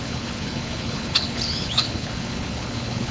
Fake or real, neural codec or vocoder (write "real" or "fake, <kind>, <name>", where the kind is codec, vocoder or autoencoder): fake, codec, HILCodec